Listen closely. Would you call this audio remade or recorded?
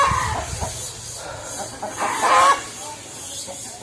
recorded